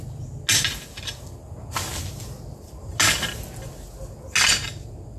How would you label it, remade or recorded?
recorded